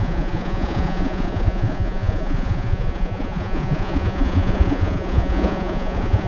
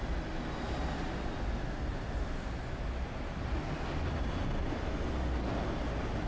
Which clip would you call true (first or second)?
second